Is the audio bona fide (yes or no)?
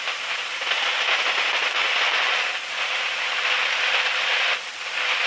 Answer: yes